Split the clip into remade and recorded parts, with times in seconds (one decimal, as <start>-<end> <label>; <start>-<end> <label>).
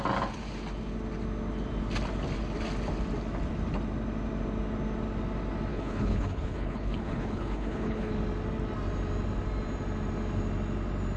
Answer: 0.0-5.7 recorded; 5.7-8.1 remade; 8.1-11.2 recorded